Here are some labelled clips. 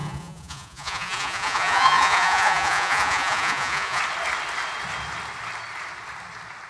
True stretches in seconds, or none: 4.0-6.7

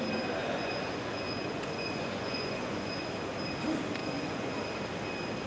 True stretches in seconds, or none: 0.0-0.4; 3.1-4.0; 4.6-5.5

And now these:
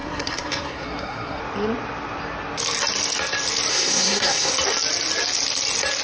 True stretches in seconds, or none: 1.4-3.7; 4.5-6.0

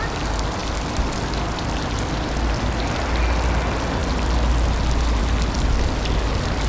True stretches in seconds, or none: 0.0-6.7